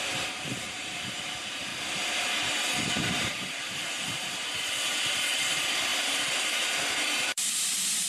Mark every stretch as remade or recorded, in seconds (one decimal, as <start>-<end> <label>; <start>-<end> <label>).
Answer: 0.0-1.7 remade; 1.7-3.1 recorded; 3.1-8.1 remade